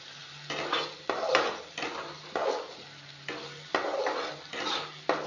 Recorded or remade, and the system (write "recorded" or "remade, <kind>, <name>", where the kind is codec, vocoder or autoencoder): recorded